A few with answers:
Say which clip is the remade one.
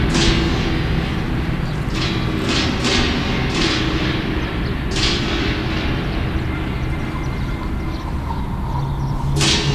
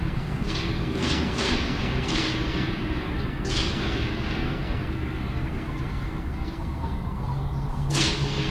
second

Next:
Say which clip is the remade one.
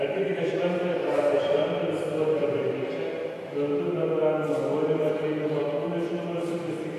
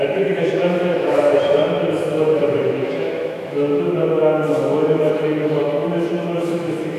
second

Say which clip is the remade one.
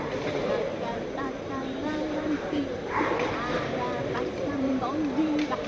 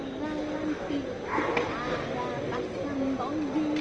first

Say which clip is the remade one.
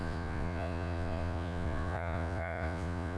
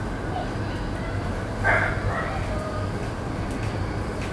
first